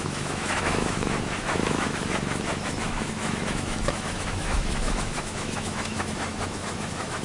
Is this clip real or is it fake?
fake